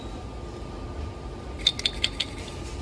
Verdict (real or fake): real